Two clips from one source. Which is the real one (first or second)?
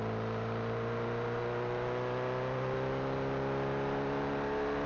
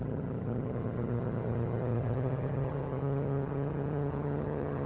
first